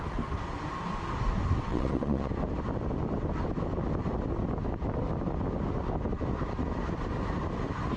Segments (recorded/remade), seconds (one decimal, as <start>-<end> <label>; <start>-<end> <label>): 0.0-1.7 recorded; 1.7-2.3 remade; 2.3-8.0 recorded